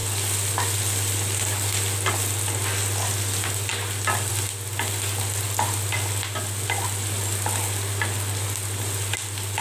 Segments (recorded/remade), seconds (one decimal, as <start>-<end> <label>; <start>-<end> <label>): 0.0-9.6 recorded